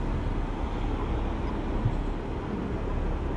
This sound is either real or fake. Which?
real